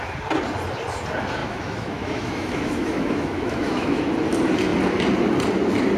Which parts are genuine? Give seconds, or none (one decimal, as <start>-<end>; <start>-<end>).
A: 0.0-1.4; 4.0-6.0